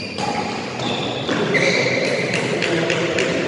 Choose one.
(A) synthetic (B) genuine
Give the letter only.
B